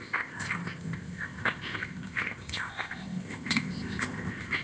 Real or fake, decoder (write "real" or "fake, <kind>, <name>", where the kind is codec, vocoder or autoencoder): fake, codec, ZipCodec